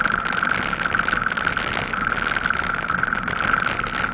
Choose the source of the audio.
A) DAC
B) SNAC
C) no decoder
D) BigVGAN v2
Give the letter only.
C